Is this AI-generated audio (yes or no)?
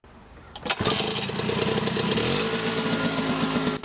no